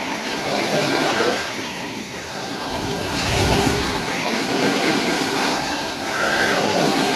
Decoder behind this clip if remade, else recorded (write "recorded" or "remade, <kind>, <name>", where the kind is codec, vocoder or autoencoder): remade, codec, SNAC